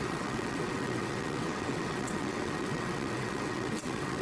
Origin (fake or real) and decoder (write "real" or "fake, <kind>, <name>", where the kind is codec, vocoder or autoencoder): fake, vocoder, WaveNeXt